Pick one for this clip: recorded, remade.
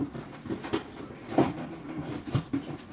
recorded